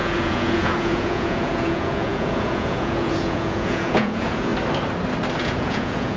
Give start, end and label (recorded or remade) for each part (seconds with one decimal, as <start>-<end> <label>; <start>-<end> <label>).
0.0-4.5 remade; 4.5-5.4 recorded; 5.4-6.2 remade